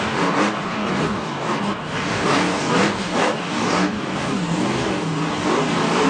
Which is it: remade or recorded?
remade